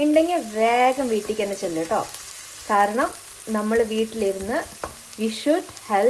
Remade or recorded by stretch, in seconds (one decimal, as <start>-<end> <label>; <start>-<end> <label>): 0.0-6.1 recorded